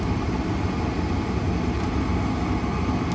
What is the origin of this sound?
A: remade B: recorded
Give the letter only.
B